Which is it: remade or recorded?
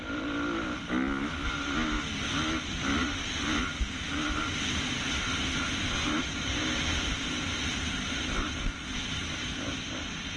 recorded